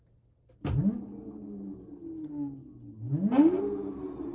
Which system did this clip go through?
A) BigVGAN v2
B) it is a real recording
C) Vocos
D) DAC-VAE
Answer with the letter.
B